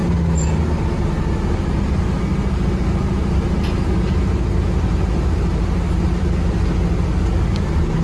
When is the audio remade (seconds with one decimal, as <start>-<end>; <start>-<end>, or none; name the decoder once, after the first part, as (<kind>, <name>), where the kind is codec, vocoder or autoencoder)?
none